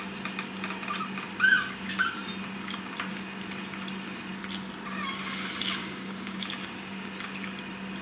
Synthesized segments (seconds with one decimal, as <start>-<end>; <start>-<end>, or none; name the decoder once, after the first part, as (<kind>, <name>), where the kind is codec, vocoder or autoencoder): 5.8-7.1 (codec, DAC)